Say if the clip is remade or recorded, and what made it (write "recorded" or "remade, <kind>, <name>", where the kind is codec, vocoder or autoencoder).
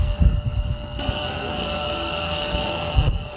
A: remade, codec, SNAC